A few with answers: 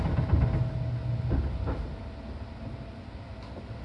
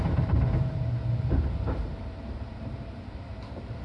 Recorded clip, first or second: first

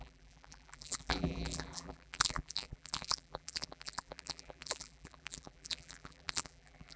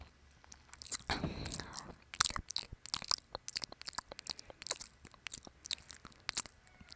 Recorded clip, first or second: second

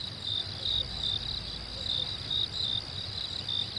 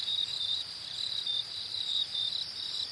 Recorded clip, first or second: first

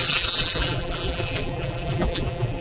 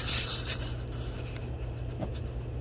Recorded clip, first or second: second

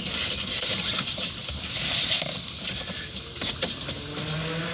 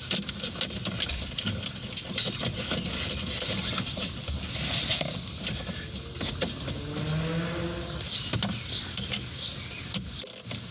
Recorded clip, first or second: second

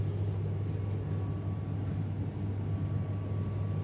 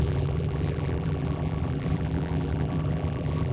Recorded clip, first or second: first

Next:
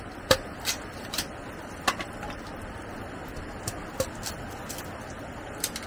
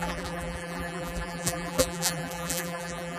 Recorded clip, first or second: first